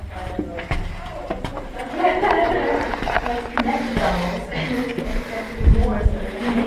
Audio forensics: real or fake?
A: real